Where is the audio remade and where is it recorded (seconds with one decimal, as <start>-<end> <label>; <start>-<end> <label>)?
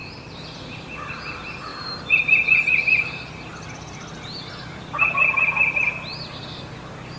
0.0-1.7 recorded; 1.7-4.4 remade; 4.4-7.2 recorded